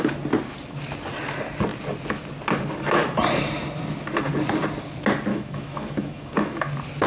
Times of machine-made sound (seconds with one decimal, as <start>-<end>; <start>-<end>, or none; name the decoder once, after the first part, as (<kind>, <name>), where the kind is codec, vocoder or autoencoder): 5.3-6.6 (autoencoder, DAC-VAE)